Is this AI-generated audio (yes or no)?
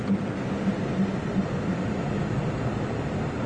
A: no